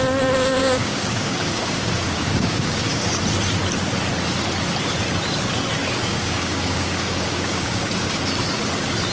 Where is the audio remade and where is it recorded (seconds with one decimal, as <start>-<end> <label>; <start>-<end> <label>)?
0.0-0.6 recorded; 0.6-3.1 remade; 3.1-5.8 recorded; 5.8-8.2 remade; 8.2-9.1 recorded